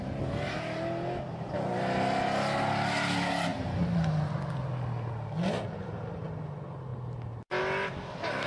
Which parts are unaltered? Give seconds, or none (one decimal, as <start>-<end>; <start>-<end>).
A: 0.0-6.9; 7.6-8.5